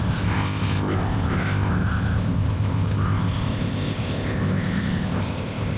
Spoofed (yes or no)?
yes